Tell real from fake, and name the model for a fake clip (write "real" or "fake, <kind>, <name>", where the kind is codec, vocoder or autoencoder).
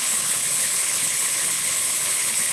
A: fake, codec, HILCodec